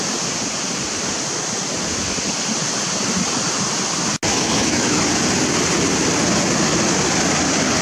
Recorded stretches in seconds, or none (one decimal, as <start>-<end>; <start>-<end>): 0.0-4.3; 5.0-7.8